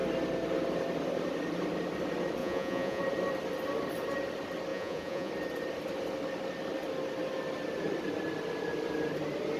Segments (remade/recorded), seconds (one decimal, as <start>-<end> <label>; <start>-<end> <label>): 0.0-2.4 recorded; 2.4-3.0 remade; 3.0-4.7 recorded; 4.7-5.3 remade; 5.3-9.6 recorded